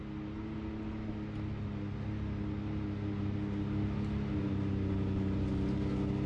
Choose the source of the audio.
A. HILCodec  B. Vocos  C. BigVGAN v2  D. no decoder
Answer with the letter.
D